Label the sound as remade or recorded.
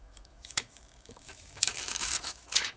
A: remade